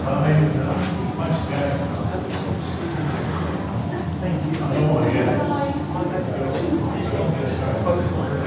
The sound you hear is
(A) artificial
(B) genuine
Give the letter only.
B